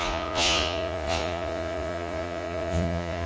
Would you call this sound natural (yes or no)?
no